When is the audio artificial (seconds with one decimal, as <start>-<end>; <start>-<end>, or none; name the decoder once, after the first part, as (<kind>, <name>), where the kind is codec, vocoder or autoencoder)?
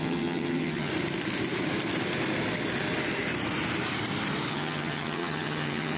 0.0-0.9 (vocoder, HiFi-GAN); 4.5-6.0